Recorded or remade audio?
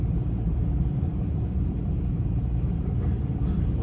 remade